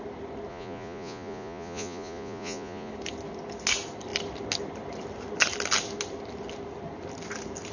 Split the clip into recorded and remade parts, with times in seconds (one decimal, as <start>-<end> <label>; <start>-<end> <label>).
0.0-0.5 recorded; 0.5-2.9 remade; 2.9-7.7 recorded